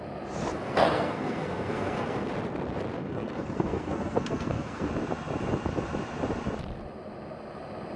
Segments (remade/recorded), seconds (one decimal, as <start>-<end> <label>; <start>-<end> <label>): 0.0-0.5 recorded; 0.5-2.3 remade; 2.3-3.0 recorded; 3.0-4.9 remade; 4.9-8.0 recorded